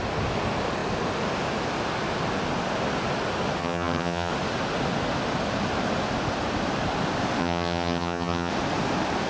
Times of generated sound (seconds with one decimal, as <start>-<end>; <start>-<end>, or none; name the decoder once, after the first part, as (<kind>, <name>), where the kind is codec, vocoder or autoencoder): 3.6-4.3 (vocoder, HiFi-GAN); 7.4-8.5